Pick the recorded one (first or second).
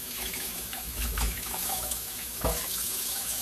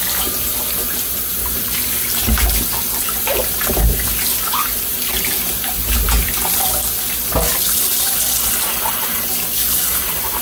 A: second